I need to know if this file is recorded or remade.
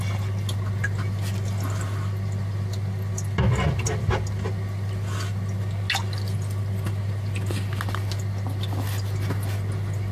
recorded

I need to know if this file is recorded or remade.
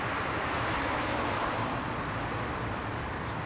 recorded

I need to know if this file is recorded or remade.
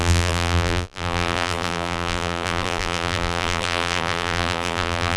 remade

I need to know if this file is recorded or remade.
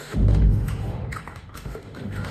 remade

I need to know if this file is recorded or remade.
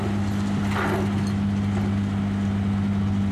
recorded